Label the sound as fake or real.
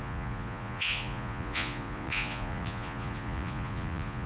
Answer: fake